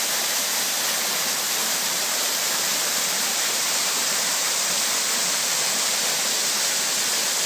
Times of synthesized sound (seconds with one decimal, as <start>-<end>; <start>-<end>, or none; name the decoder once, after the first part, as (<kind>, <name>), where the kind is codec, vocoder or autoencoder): 1.6-4.6 (vocoder, BigVGAN v2)